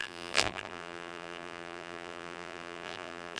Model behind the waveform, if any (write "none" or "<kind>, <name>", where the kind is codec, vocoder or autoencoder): vocoder, BigVGAN v2